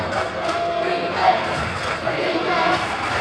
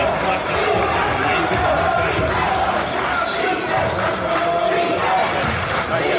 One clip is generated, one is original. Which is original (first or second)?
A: second